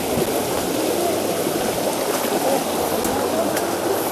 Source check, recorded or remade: recorded